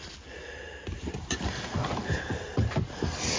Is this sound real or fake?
real